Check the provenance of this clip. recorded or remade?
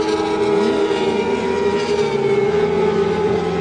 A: recorded